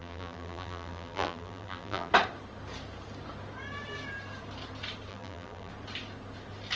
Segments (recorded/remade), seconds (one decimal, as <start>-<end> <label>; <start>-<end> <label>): 0.0-2.1 remade; 2.1-5.1 recorded; 5.1-5.7 remade; 5.7-6.8 recorded